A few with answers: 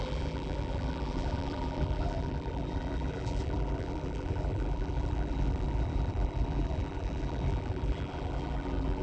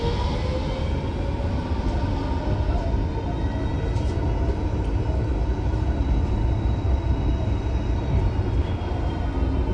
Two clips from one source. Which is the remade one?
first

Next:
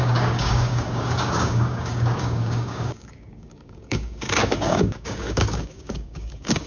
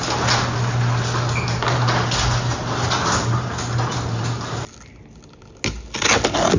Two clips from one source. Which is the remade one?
first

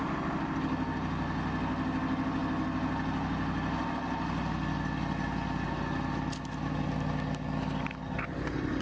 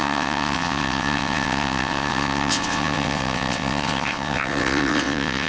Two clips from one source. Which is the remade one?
second